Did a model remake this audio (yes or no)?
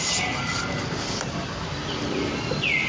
no